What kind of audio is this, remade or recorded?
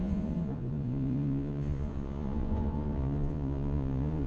remade